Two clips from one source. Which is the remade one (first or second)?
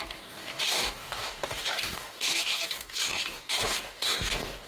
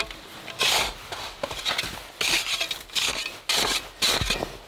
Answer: first